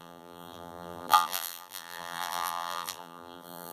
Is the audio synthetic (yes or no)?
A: yes